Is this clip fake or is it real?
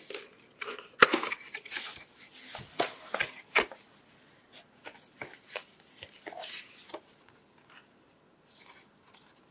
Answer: real